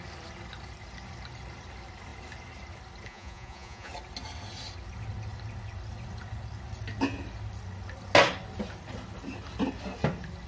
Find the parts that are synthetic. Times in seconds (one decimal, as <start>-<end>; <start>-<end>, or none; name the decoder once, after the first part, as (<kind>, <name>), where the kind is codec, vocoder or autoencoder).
3.1-3.9 (vocoder, Vocos)